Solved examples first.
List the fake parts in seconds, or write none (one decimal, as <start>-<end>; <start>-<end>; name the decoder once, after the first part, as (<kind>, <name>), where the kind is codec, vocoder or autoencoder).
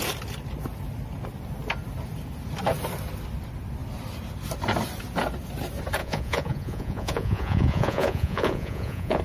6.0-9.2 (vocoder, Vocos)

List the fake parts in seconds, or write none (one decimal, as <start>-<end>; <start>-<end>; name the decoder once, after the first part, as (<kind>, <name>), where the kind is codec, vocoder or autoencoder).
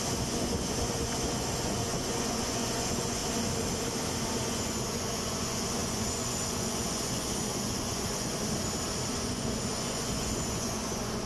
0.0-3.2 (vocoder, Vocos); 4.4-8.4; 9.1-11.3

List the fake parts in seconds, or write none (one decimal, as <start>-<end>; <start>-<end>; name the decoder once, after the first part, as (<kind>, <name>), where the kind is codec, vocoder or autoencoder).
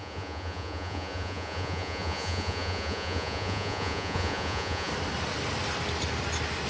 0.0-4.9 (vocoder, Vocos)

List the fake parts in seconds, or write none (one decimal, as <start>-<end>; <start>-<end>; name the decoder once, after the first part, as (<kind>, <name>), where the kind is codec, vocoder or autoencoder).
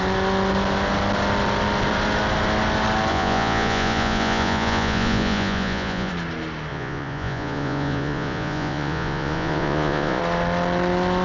3.1-6.1 (vocoder, Vocos); 6.7-10.2